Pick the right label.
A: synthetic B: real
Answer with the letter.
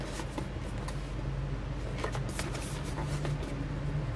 B